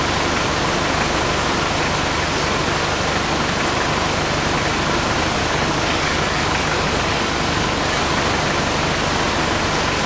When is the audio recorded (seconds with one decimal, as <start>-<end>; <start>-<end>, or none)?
0.0-5.4; 8.0-10.1